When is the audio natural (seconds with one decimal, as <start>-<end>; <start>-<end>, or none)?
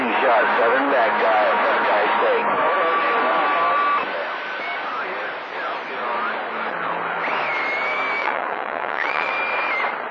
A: 0.0-8.2; 9.3-10.1